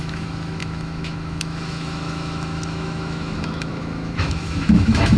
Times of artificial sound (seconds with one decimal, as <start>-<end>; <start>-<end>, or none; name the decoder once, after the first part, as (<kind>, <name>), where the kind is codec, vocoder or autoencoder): 0.0-5.2 (autoencoder, DAC-VAE)